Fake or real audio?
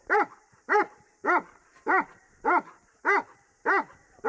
fake